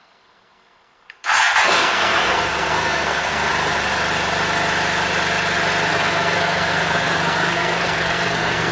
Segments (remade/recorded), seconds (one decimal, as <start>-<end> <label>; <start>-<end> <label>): 0.0-3.5 remade; 3.5-5.9 recorded; 5.9-8.7 remade